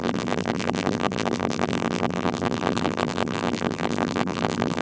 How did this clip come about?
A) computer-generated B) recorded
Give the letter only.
A